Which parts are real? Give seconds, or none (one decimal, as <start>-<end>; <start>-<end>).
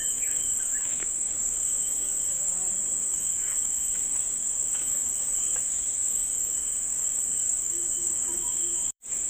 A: 2.5-3.0